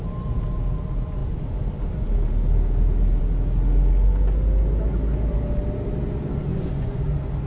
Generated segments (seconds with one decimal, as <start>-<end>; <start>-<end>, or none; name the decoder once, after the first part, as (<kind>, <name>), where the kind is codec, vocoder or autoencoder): 6.5-7.0 (vocoder, Vocos)